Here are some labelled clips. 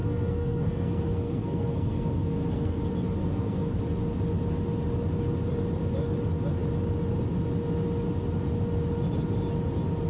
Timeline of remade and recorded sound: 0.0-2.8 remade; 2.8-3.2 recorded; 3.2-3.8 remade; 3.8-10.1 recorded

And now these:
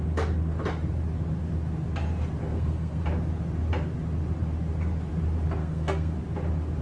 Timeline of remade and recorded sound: 0.0-2.5 recorded; 2.5-3.0 remade; 3.0-5.6 recorded; 5.6-6.1 remade; 6.1-6.8 recorded

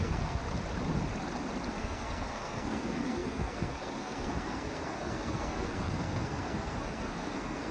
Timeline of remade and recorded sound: 0.0-0.4 remade; 0.4-1.7 recorded; 1.7-7.7 remade

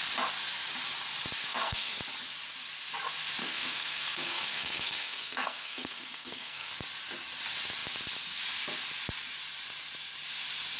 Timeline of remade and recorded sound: 0.0-1.4 recorded; 1.4-2.0 remade; 2.0-3.4 recorded; 3.4-6.7 remade; 6.7-10.8 recorded

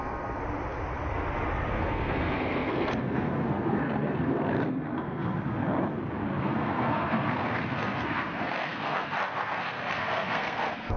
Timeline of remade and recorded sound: 0.0-0.4 remade; 0.4-1.7 recorded; 1.7-5.6 remade; 5.6-6.4 recorded; 6.4-11.0 remade

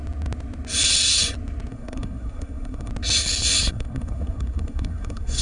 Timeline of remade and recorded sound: 0.0-1.7 recorded; 1.7-2.9 remade; 2.9-3.7 recorded; 3.7-5.4 remade

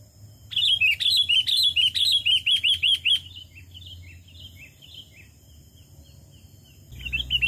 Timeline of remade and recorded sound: 0.0-7.5 recorded

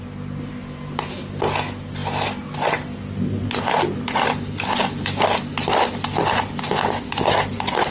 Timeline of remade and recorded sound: 0.0-7.9 recorded